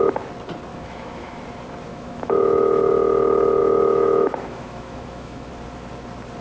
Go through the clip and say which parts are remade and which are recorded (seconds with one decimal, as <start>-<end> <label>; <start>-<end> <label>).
0.0-0.7 recorded; 0.7-1.4 remade; 1.4-1.9 recorded; 1.9-2.9 remade; 2.9-3.6 recorded; 3.6-5.5 remade; 5.5-6.4 recorded